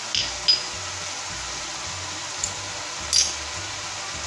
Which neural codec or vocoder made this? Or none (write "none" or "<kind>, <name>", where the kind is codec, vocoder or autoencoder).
none